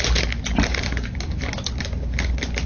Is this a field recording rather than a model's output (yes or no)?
yes